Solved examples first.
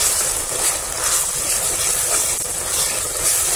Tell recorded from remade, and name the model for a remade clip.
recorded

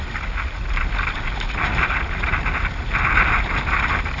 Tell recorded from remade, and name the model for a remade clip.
recorded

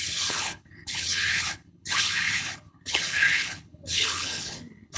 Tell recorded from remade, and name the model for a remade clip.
remade, codec, HILCodec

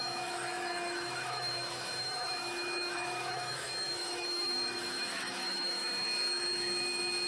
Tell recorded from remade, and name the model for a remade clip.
remade, autoencoder, DAC-VAE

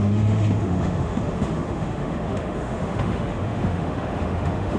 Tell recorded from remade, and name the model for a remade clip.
remade, autoencoder, DAC-VAE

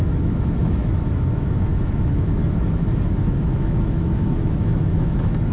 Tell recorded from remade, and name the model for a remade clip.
remade, autoencoder, DAC-VAE